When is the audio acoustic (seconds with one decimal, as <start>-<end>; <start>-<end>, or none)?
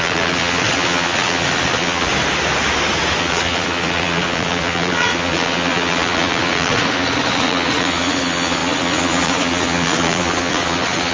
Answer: 2.1-3.2